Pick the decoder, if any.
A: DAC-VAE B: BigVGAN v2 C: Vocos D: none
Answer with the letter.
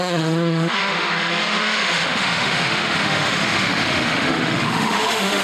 A